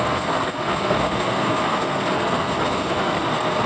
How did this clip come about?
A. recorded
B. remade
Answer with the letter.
B